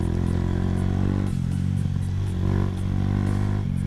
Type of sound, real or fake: real